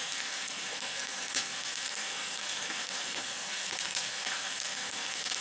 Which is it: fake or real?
fake